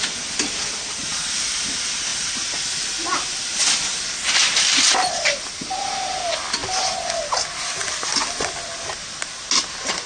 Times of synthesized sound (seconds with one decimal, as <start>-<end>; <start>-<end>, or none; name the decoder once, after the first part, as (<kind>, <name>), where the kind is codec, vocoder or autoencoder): none